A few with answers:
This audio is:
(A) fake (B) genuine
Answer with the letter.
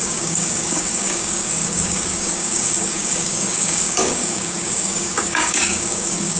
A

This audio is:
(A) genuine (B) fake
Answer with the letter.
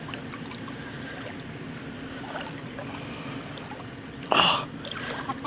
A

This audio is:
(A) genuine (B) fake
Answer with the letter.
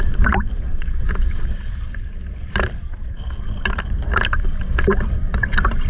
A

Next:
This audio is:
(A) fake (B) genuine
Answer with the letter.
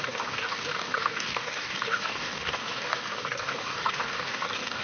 A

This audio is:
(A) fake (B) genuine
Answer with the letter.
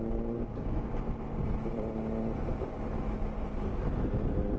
B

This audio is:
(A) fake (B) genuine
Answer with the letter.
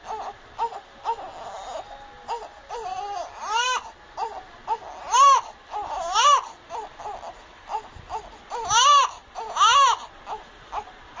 B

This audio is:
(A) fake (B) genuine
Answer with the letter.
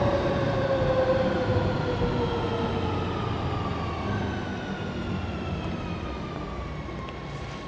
B